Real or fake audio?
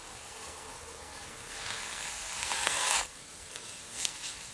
fake